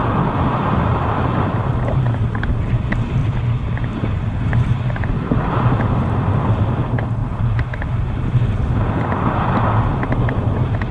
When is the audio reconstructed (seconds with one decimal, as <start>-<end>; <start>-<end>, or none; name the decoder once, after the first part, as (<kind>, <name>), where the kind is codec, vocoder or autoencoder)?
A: 0.0-0.7 (vocoder, BigVGAN v2); 3.2-4.0; 4.5-5.5